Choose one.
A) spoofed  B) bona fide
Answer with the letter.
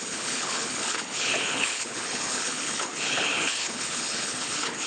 A